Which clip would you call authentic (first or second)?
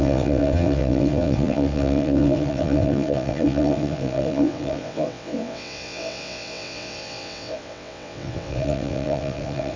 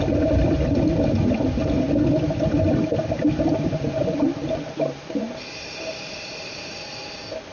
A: second